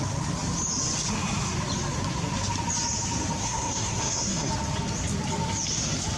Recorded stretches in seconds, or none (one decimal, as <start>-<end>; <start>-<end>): 0.0-3.4; 4.5-6.2